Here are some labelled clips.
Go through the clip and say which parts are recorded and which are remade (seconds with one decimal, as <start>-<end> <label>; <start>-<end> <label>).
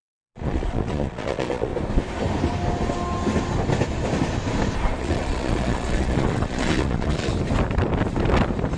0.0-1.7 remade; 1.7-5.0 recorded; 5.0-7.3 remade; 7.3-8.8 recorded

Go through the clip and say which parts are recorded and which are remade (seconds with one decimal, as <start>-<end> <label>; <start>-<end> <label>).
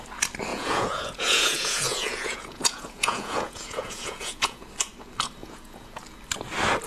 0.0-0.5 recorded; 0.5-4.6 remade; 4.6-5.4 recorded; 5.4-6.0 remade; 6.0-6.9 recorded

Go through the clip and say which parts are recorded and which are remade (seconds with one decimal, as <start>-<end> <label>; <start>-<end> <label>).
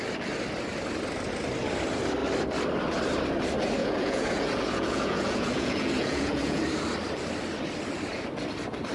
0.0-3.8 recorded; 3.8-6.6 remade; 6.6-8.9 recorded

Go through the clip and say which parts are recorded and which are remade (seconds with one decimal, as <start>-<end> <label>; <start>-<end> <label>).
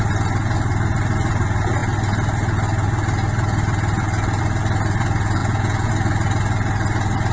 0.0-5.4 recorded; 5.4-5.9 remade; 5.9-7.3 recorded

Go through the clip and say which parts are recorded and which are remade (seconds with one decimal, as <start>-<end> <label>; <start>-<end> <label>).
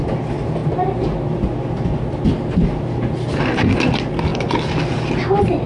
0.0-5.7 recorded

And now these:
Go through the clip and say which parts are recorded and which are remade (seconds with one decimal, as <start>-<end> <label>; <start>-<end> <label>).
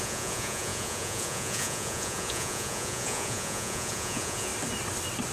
0.0-4.5 remade; 4.5-5.3 recorded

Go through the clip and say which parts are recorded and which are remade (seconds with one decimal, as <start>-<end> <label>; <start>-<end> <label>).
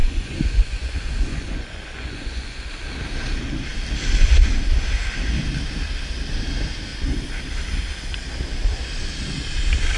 0.0-2.7 remade; 2.7-10.0 recorded